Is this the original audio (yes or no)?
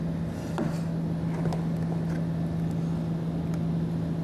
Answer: yes